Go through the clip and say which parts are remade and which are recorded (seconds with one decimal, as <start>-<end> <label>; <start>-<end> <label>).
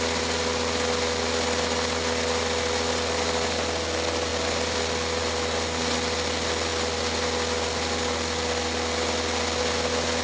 0.0-10.2 recorded